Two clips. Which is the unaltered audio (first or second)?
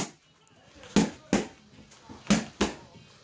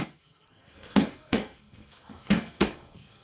first